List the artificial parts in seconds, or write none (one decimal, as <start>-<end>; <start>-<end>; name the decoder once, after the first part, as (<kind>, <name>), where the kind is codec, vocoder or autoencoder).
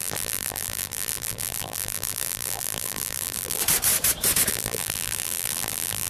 0.0-3.6 (vocoder, BigVGAN v2); 4.5-6.1